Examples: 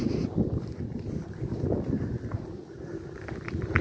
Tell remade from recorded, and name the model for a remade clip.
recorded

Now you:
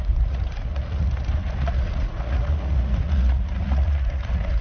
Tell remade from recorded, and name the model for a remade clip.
remade, vocoder, Vocos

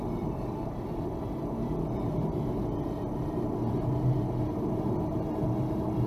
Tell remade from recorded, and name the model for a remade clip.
recorded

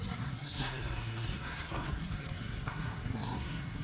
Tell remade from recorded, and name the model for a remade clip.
remade, codec, SNAC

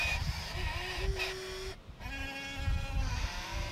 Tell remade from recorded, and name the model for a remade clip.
recorded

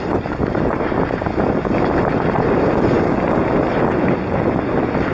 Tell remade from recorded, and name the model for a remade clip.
recorded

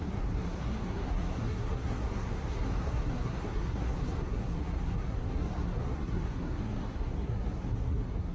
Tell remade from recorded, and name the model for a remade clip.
remade, codec, SNAC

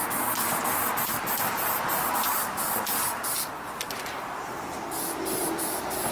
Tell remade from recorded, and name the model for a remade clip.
recorded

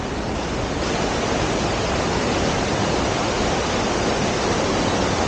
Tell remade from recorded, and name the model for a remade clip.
recorded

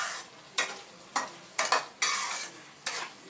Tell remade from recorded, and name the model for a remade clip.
recorded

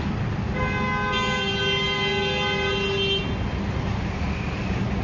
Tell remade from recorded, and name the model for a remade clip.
recorded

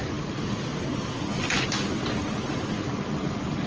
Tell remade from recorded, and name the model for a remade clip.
recorded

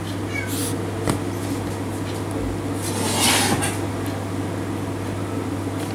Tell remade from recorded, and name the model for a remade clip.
recorded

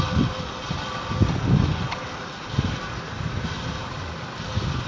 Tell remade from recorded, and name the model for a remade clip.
recorded